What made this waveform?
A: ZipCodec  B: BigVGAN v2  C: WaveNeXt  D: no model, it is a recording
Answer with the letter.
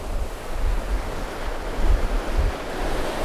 D